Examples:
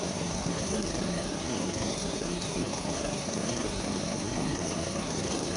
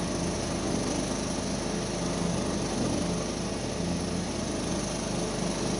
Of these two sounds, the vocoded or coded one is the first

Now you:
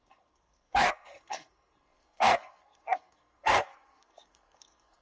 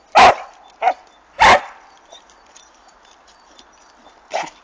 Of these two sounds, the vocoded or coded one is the first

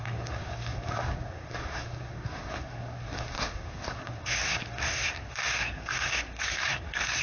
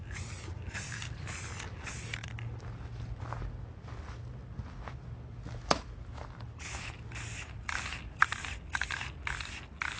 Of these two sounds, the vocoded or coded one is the first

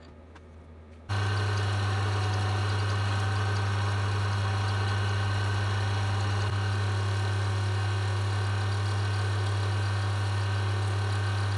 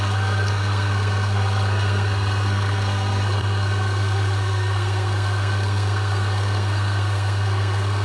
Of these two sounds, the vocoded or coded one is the second